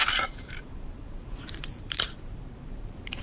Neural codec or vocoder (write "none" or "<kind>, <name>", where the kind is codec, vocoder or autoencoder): vocoder, BigVGAN v2